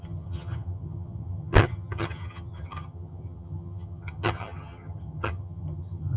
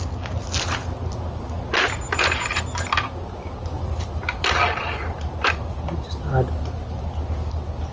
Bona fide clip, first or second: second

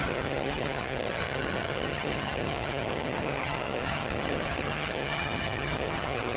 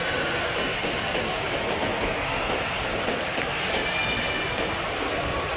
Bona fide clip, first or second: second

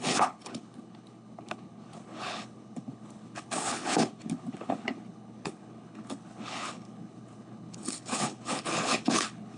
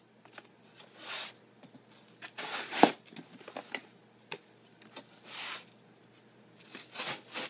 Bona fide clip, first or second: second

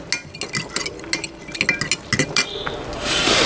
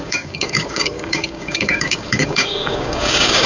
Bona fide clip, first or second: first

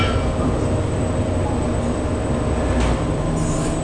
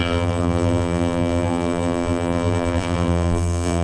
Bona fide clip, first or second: first